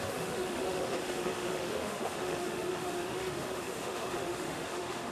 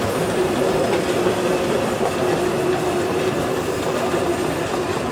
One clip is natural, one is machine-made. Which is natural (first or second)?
second